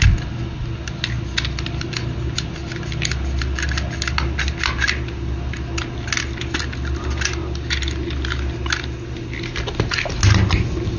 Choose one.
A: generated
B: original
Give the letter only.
B